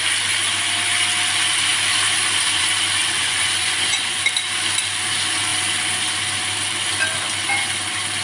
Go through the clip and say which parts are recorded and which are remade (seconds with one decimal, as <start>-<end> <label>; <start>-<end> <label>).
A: 0.0-3.0 recorded; 3.0-4.2 remade; 4.2-8.2 recorded